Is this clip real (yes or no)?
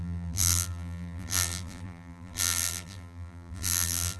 no